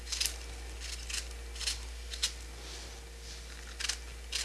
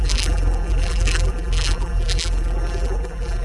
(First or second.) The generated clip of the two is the second